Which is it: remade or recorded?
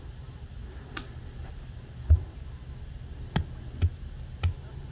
recorded